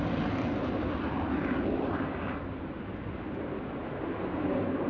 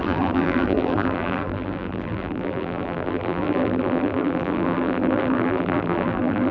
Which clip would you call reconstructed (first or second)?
second